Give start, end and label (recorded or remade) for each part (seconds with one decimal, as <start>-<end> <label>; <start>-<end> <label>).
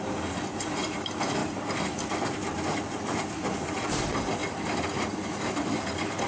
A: 0.0-4.4 remade; 4.4-5.0 recorded; 5.0-6.3 remade